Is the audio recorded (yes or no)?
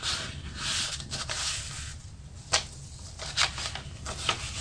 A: yes